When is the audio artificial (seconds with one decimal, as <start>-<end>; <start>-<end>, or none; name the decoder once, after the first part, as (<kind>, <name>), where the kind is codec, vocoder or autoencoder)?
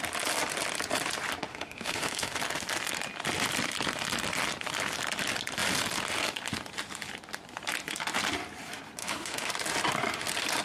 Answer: 1.5-2.4 (autoencoder, DAC-VAE); 9.0-9.5